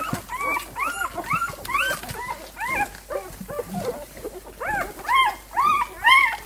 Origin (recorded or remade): recorded